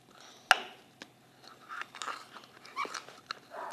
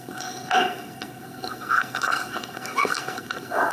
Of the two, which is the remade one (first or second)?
second